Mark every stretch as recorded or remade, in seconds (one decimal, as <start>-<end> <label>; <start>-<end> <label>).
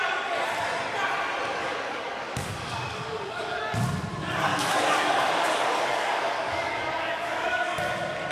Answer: 0.0-1.6 recorded; 1.6-3.8 remade; 3.8-4.5 recorded; 4.5-7.8 remade; 7.8-8.3 recorded